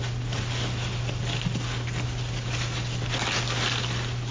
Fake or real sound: real